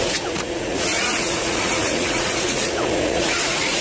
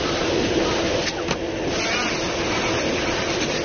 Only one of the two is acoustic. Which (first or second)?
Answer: second